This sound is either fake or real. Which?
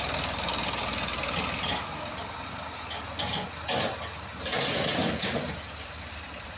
real